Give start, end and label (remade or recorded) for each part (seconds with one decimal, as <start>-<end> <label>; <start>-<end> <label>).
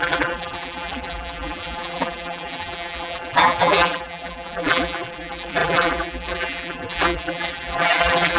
0.0-8.4 remade